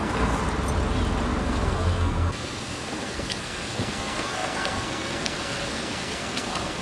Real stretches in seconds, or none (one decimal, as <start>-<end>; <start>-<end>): 0.4-1.4